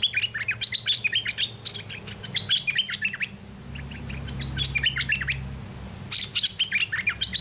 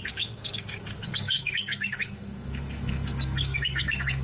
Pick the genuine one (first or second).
first